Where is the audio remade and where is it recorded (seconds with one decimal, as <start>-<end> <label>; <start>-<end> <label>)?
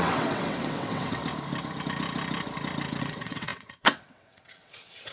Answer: 0.0-1.2 remade; 1.2-3.0 recorded; 3.0-5.1 remade